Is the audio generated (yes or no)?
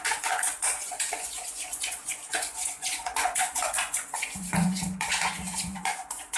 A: yes